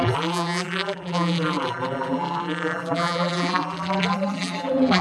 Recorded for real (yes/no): no